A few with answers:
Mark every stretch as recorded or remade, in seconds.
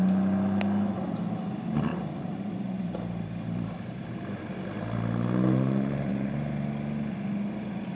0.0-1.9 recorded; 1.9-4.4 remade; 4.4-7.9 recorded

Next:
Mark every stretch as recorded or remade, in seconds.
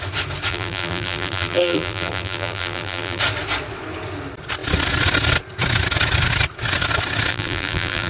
0.0-0.5 recorded; 0.5-3.2 remade; 3.2-7.3 recorded; 7.3-8.1 remade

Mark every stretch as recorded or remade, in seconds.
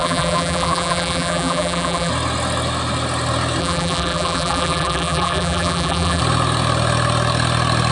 0.0-2.1 remade; 2.1-3.6 recorded; 3.6-6.2 remade; 6.2-7.9 recorded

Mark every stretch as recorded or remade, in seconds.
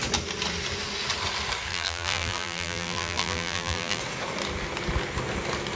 0.0-1.7 recorded; 1.7-4.0 remade; 4.0-5.8 recorded